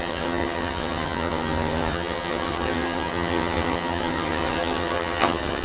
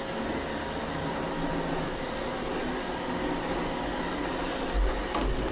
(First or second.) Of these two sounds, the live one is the second